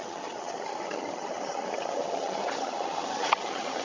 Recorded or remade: remade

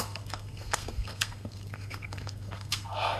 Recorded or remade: remade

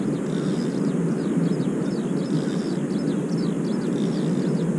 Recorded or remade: recorded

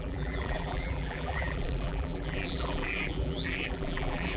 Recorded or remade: remade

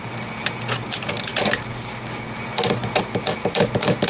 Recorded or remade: recorded